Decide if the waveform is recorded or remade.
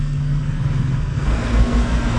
remade